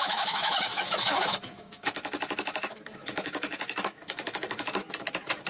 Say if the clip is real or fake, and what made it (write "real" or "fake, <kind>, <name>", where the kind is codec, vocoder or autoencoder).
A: fake, autoencoder, DAC-VAE